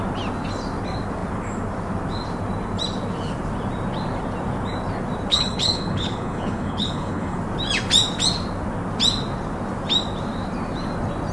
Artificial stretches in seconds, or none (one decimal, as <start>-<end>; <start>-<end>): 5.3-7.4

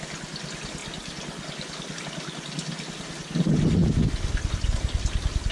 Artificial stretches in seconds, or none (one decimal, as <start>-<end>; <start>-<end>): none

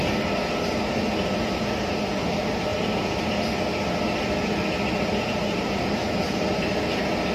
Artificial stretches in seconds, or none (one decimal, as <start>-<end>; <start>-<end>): none

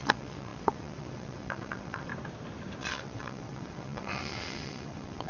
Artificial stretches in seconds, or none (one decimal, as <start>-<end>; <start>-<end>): 0.0-2.1; 2.8-5.3